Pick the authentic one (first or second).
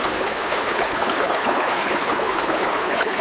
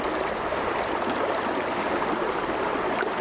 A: second